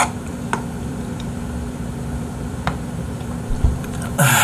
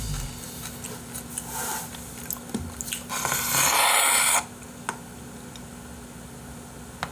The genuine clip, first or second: second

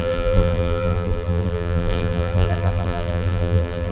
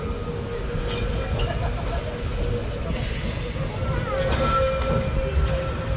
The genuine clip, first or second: second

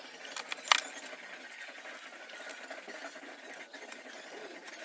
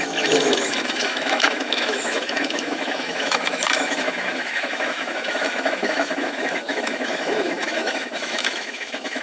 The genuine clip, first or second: first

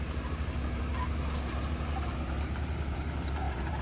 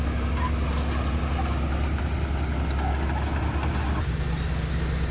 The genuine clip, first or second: second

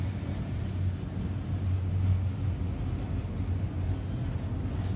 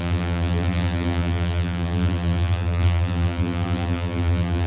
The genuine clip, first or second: first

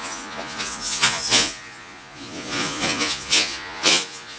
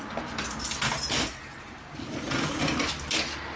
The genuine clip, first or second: second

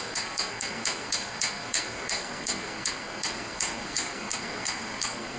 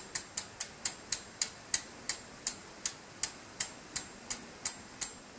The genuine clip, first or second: second